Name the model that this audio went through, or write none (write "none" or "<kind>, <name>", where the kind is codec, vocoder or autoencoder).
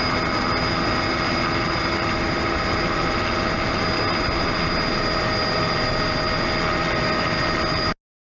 none